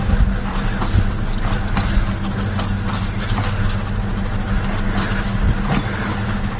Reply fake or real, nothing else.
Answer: real